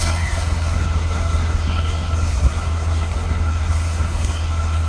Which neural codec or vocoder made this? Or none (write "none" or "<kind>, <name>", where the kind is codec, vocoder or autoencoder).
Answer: codec, SNAC